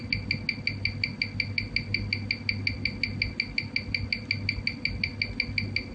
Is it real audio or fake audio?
real